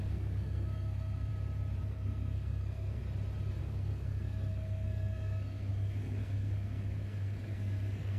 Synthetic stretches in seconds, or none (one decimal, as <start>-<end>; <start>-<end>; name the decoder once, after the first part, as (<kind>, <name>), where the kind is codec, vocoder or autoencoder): 0.0-1.3 (codec, SNAC); 1.8-3.0; 3.6-8.2